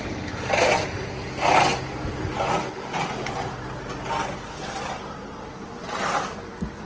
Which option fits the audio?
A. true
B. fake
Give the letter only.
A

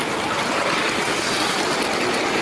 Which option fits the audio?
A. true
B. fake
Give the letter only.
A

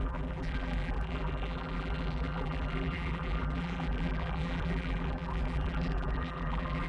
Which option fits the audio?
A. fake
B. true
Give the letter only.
A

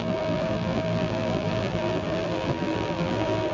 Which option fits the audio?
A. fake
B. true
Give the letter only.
A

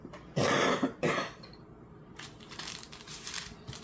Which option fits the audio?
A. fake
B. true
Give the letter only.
A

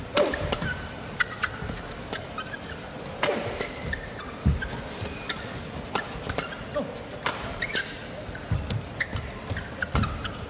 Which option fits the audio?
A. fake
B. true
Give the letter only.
B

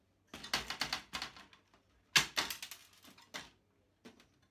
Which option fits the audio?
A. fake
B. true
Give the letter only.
B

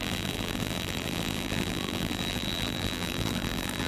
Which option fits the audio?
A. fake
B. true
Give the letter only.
A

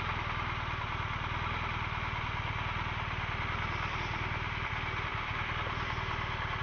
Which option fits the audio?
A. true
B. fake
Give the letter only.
A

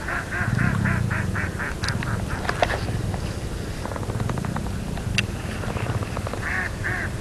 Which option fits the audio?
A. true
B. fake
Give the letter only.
A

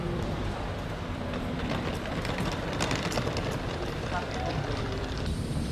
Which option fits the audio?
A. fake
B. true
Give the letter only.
A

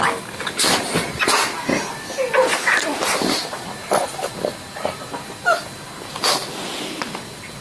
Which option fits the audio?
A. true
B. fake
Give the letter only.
A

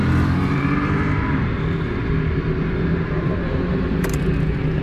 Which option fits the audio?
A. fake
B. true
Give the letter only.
A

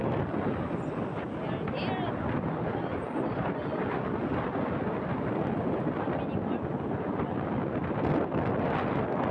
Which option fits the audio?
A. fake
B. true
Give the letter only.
B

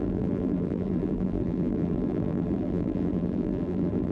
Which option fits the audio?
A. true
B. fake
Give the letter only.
B